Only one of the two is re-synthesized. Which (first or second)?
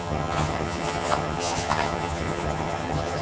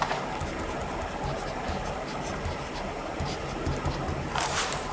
first